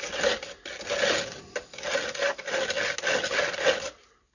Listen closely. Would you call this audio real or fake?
real